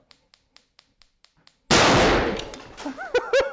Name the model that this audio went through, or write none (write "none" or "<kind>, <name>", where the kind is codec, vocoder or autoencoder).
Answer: none